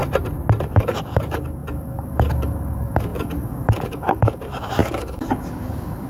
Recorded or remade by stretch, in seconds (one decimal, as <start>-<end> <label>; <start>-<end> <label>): 0.0-0.7 recorded; 0.7-6.1 remade